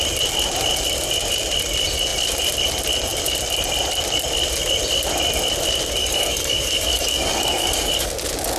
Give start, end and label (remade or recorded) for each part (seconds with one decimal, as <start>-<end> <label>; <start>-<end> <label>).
0.0-6.0 recorded; 6.0-8.1 remade; 8.1-8.6 recorded